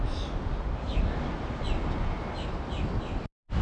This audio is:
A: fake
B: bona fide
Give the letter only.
B